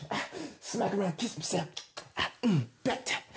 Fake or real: real